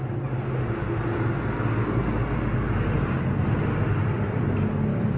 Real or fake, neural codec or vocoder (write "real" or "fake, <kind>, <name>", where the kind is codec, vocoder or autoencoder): real